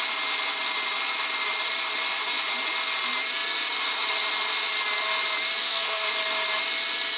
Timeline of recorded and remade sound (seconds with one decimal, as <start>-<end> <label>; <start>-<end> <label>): 0.0-5.6 recorded; 5.6-6.1 remade; 6.1-7.2 recorded